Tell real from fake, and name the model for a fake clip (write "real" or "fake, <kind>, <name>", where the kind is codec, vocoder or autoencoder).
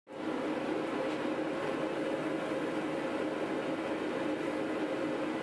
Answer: real